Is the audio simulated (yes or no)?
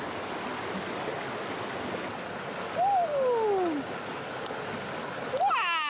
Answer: no